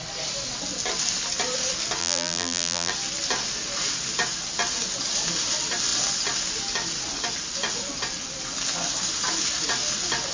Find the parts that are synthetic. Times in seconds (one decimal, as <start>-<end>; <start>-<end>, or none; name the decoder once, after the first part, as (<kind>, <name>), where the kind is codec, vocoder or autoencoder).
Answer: 2.0-2.9 (vocoder, BigVGAN v2)